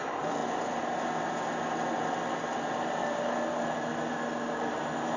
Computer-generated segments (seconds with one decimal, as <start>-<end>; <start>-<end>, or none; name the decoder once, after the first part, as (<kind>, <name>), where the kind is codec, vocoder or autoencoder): none